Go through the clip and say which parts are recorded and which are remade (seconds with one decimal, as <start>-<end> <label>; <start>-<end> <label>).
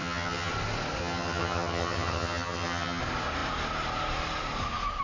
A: 0.0-0.5 remade; 0.5-1.0 recorded; 1.0-3.0 remade; 3.0-5.0 recorded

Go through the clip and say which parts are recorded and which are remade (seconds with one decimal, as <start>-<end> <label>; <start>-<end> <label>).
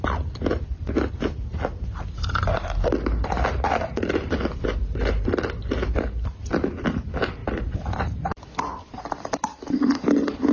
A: 0.0-7.4 recorded; 7.4-9.1 remade; 9.1-10.5 recorded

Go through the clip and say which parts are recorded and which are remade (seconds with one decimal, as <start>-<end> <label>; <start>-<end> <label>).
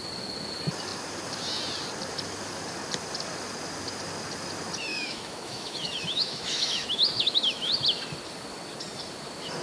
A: 0.0-4.9 recorded; 4.9-7.7 remade; 7.7-9.6 recorded